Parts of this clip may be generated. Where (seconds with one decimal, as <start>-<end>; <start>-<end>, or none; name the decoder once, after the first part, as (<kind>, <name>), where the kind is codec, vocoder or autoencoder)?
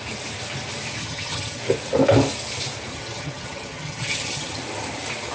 1.0-1.6 (vocoder, HiFi-GAN); 2.9-4.6